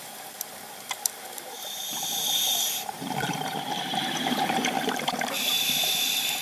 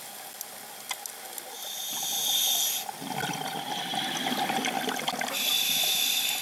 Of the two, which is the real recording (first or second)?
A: second